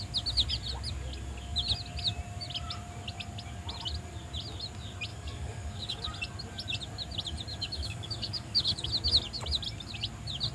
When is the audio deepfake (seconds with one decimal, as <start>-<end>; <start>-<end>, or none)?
5.1-6.1; 7.5-8.9